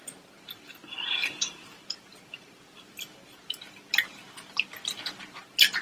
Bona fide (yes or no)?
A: no